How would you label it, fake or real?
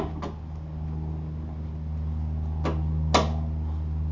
real